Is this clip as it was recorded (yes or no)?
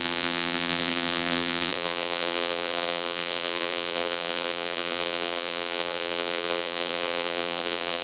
no